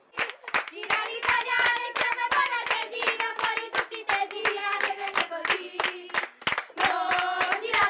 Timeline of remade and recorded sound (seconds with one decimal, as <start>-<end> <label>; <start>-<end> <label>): 0.0-4.6 recorded; 4.6-5.3 remade; 5.3-7.9 recorded